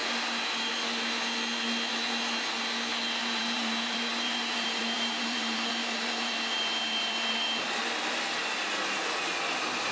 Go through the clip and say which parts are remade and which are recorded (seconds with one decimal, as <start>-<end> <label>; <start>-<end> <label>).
0.0-0.7 remade; 0.7-3.2 recorded; 3.2-7.8 remade; 7.8-9.9 recorded